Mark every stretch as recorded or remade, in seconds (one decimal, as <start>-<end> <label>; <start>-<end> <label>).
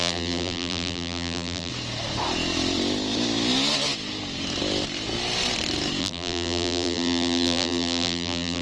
0.0-1.7 remade; 1.7-6.0 recorded; 6.0-8.6 remade